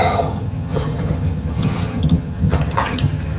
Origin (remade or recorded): remade